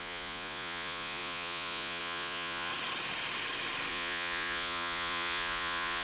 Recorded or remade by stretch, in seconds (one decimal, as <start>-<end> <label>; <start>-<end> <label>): 0.0-2.7 remade; 2.7-3.9 recorded; 3.9-6.0 remade